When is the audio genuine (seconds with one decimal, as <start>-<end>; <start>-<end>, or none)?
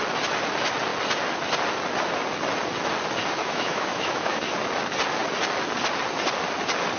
0.0-3.4; 4.4-7.0